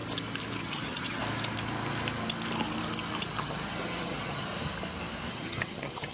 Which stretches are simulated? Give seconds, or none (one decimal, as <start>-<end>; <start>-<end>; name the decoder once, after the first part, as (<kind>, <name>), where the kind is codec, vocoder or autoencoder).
0.6-1.2 (vocoder, HiFi-GAN); 3.3-4.5; 5.3-6.1